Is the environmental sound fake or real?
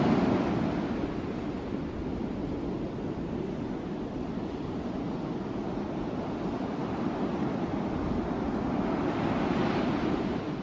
real